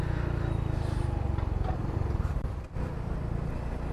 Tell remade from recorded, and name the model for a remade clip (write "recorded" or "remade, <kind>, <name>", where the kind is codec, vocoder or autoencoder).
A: recorded